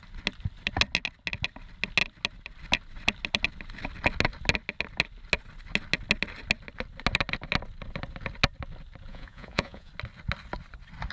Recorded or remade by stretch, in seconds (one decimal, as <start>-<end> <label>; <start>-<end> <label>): 0.0-9.1 recorded; 9.1-9.9 remade; 9.9-11.1 recorded